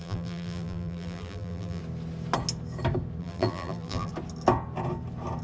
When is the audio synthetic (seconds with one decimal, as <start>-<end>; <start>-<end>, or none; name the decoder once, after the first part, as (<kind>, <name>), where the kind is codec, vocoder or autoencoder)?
0.0-1.8 (vocoder, BigVGAN v2); 3.2-4.1